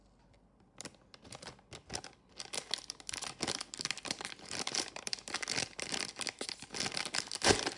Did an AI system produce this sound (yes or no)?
no